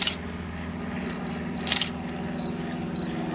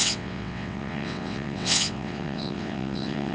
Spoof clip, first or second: second